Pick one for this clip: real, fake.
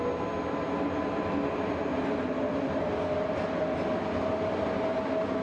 real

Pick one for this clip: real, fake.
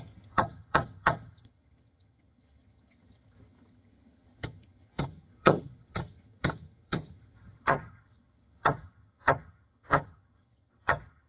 fake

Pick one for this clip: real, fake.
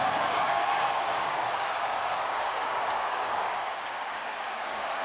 fake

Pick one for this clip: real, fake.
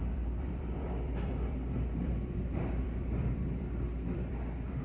fake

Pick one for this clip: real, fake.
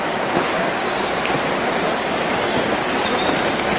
real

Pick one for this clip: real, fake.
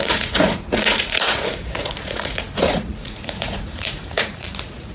fake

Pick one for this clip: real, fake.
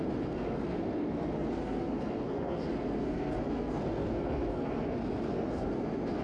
fake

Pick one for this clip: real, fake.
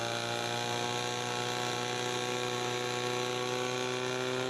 real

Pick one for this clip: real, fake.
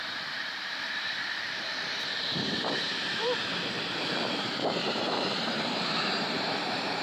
fake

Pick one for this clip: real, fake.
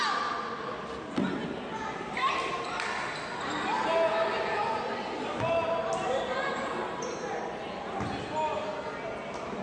real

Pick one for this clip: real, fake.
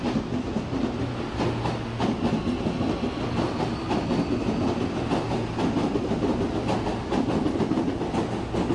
real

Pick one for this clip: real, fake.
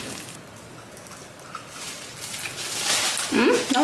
real